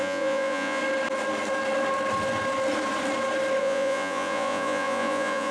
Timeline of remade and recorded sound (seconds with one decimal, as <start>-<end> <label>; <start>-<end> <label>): 0.0-0.8 remade; 0.8-3.6 recorded; 3.6-5.5 remade